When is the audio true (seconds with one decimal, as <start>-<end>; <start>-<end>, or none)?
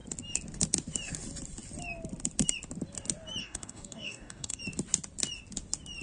0.0-3.4; 4.6-6.0